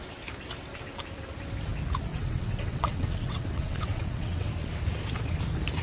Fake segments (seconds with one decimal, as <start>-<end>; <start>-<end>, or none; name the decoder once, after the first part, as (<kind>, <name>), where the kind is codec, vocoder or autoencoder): 2.1-4.5 (vocoder, WaveNeXt)